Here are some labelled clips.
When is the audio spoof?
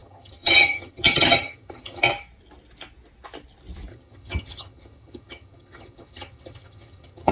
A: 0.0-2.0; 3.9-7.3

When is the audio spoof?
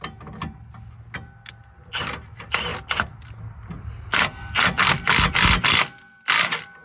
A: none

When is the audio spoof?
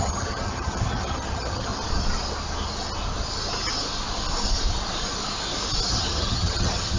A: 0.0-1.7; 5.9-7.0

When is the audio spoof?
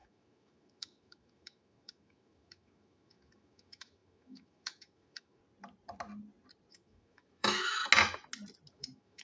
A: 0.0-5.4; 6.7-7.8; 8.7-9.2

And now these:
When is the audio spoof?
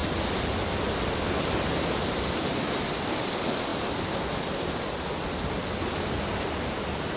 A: none